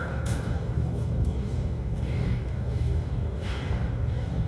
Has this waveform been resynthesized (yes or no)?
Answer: yes